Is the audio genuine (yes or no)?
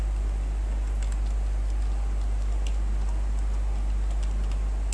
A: yes